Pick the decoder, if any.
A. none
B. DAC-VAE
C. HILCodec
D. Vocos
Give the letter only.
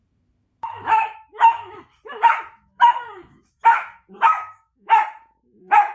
B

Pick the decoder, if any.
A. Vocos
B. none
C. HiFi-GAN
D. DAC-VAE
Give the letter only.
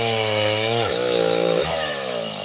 D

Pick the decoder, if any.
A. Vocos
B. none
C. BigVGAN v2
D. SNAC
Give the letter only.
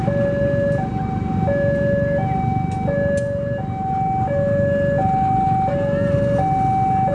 B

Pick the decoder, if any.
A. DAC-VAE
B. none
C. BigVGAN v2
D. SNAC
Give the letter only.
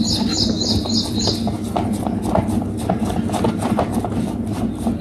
B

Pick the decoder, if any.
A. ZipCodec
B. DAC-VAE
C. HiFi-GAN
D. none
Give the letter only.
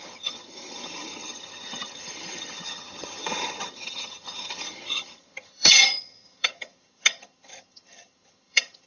C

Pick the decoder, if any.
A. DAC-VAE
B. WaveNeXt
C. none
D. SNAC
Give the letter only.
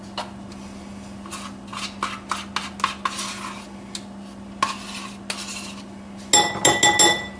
C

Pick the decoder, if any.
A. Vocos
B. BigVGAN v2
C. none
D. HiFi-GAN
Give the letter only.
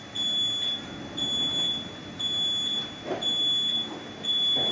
C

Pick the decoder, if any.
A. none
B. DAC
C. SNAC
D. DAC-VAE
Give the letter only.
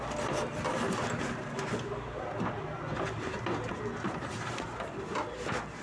A